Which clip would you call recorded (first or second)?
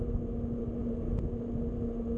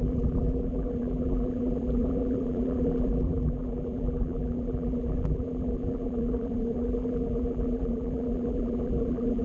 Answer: first